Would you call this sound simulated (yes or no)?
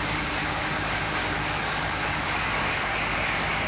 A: yes